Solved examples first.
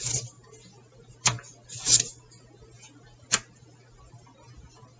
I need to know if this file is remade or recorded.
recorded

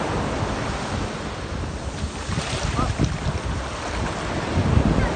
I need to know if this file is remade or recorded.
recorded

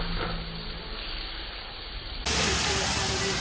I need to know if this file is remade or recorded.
recorded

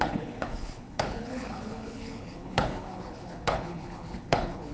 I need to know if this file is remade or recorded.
remade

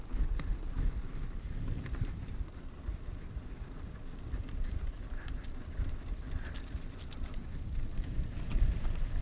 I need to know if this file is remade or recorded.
recorded